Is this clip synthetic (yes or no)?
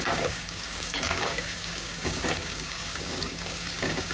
yes